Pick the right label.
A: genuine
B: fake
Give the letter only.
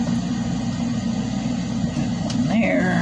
A